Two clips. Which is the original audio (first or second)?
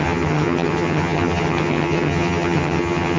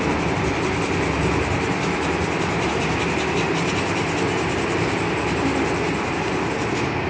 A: second